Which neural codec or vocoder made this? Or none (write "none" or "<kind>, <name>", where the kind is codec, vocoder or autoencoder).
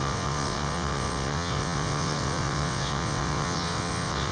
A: vocoder, WaveNeXt